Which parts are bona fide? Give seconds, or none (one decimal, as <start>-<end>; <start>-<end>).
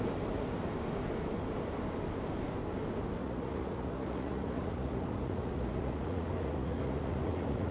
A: 0.0-3.2